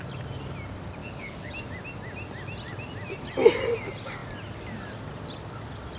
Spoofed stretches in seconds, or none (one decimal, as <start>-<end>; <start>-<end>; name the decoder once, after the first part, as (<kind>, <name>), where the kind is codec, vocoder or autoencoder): 1.0-1.5 (codec, HILCodec)